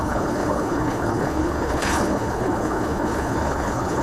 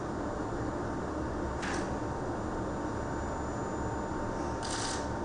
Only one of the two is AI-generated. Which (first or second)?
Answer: first